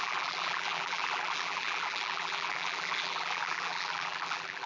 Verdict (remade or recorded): remade